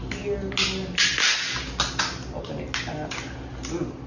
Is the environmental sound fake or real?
real